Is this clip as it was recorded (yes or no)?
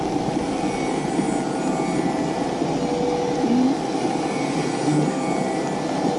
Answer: yes